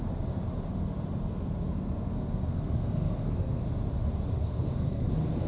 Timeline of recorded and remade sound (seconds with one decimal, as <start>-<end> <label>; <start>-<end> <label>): 0.0-1.3 recorded; 1.3-3.6 remade; 3.6-4.4 recorded; 4.4-5.1 remade; 5.1-5.5 recorded